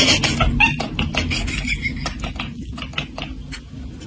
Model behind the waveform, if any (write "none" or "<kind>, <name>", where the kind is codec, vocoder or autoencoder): none